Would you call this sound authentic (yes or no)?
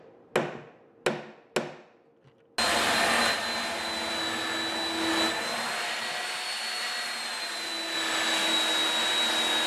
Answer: yes